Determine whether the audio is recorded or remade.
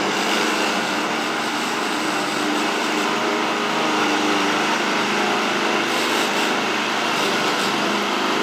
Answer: remade